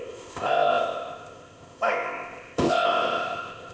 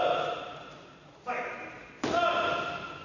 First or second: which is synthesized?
first